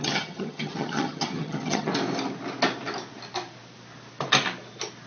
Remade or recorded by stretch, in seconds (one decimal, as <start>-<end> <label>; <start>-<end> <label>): 0.0-1.9 remade; 1.9-5.1 recorded